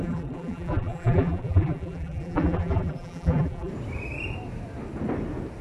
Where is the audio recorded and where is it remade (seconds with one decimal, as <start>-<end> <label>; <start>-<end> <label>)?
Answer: 0.0-3.7 remade; 3.7-5.6 recorded